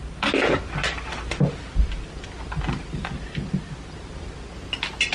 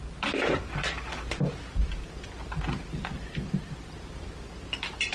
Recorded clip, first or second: first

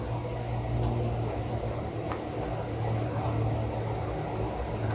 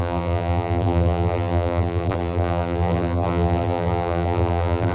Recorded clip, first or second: first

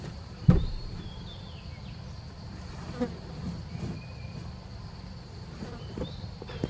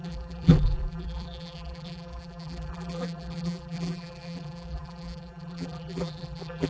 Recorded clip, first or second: first